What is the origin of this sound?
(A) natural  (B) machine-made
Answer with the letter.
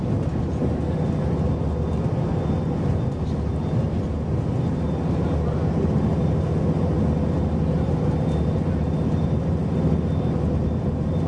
A